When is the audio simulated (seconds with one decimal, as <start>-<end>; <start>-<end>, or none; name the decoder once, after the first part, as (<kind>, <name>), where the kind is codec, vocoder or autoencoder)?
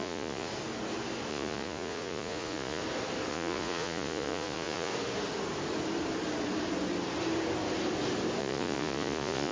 0.0-0.5 (vocoder, Vocos); 1.3-2.8; 3.3-4.9; 8.4-9.5